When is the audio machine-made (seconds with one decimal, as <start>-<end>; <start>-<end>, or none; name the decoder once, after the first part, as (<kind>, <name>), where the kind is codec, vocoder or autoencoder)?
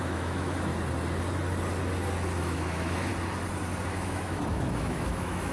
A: 0.0-0.7 (autoencoder, DAC-VAE); 2.4-3.1; 3.9-5.5